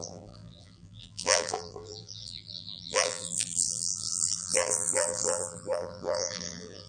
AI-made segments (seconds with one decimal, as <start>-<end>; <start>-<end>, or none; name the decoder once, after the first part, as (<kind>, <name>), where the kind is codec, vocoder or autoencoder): 0.0-6.9 (vocoder, BigVGAN v2)